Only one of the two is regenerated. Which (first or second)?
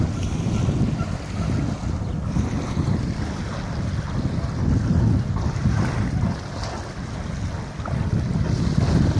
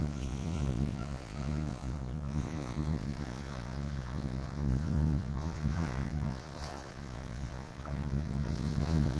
second